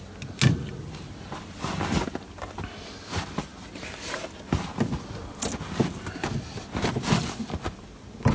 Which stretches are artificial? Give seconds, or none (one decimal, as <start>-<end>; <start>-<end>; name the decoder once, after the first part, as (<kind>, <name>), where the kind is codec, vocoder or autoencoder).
none